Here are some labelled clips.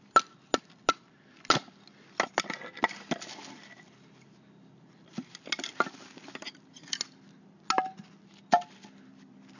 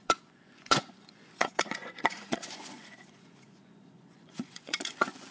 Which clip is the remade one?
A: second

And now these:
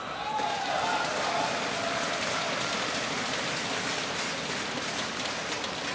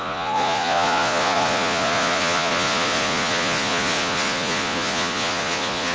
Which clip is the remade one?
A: second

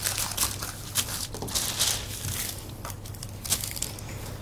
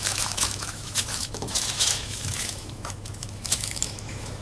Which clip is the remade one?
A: second